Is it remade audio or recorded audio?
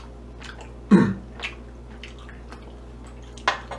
recorded